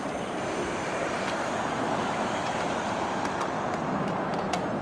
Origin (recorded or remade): remade